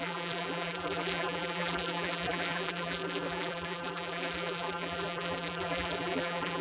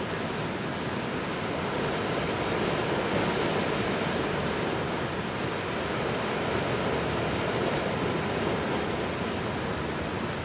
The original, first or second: second